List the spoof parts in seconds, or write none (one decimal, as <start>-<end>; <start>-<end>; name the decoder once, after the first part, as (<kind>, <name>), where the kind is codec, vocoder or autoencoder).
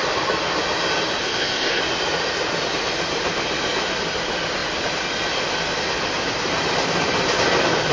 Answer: 1.2-1.8 (codec, ZipCodec)